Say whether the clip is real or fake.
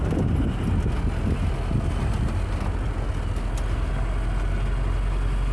real